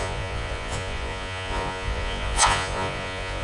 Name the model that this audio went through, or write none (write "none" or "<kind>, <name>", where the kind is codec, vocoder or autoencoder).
vocoder, Vocos